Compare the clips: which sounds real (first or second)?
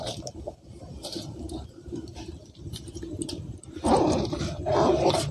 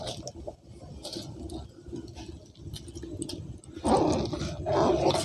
second